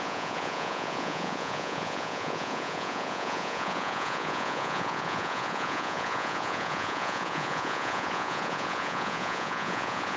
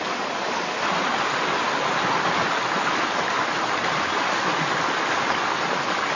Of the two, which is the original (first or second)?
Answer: second